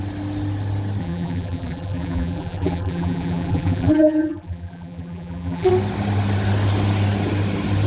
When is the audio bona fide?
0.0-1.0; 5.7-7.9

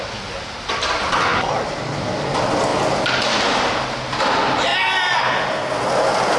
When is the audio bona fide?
0.0-6.4

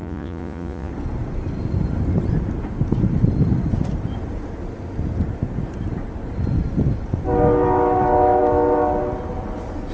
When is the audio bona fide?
0.9-9.9

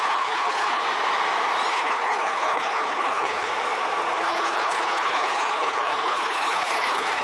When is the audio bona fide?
0.8-1.7; 3.5-4.2

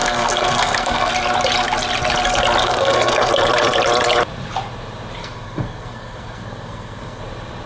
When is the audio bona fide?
1.1-2.6; 3.3-5.2; 7.2-7.7

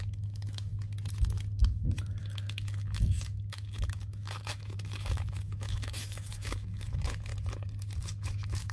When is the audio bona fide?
0.7-2.2; 7.3-8.0